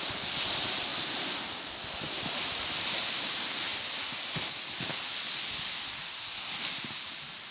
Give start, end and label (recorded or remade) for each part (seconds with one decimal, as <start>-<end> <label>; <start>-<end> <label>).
0.0-3.7 remade; 3.7-6.6 recorded; 6.6-7.5 remade

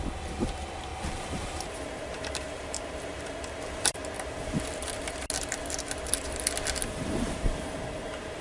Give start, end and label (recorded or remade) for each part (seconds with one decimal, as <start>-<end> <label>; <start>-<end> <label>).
0.0-0.9 recorded; 0.9-4.5 remade; 4.5-6.8 recorded; 6.8-8.4 remade

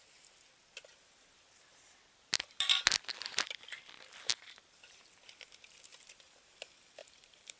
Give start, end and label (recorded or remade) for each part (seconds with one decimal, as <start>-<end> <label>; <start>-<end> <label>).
0.0-7.0 recorded; 7.0-7.6 remade

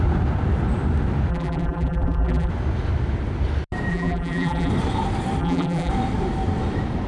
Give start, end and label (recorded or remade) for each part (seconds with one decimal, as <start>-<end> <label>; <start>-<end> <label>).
0.0-1.3 recorded; 1.3-2.5 remade; 2.5-3.9 recorded; 3.9-4.7 remade; 4.7-5.4 recorded; 5.4-5.9 remade; 5.9-7.1 recorded

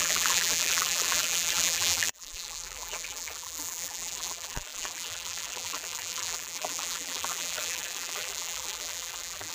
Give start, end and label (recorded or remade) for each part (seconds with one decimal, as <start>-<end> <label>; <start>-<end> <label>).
0.0-9.5 remade

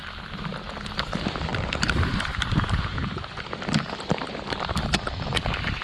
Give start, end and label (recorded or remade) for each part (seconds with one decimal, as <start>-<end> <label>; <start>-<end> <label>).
0.0-1.5 recorded; 1.5-5.0 remade; 5.0-5.8 recorded

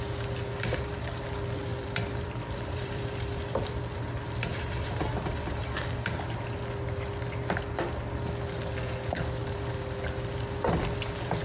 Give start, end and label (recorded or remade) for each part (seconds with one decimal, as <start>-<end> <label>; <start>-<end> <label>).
0.0-1.7 recorded; 1.7-3.8 remade; 3.8-4.5 recorded; 4.5-5.1 remade; 5.1-11.4 recorded